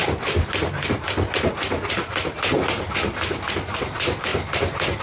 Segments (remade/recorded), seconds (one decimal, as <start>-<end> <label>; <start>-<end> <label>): 0.0-5.0 recorded